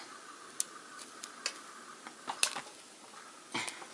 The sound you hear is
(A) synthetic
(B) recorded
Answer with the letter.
B